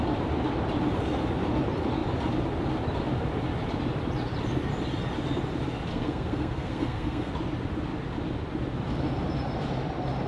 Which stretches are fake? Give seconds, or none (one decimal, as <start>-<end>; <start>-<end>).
5.9-7.3